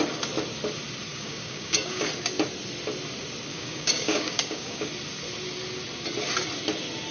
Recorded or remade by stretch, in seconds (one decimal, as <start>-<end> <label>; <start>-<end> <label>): 0.0-1.1 recorded; 1.1-2.1 remade; 2.1-3.5 recorded; 3.5-4.9 remade; 4.9-7.1 recorded